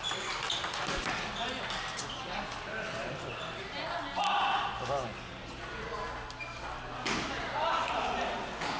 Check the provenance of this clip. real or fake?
real